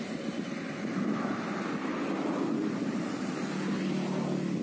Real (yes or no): yes